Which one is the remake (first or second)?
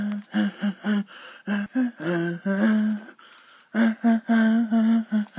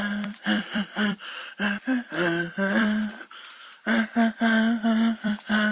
second